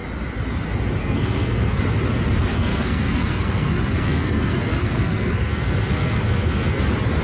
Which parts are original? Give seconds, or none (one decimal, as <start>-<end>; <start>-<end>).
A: 0.0-1.0; 1.8-2.5; 6.8-7.2